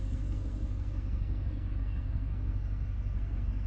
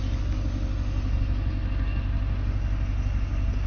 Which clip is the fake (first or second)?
first